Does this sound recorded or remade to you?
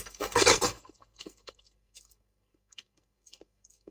remade